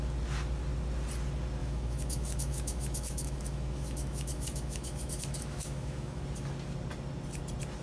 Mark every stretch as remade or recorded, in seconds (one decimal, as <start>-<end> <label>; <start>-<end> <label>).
0.0-1.6 recorded; 1.6-6.2 remade; 6.2-7.8 recorded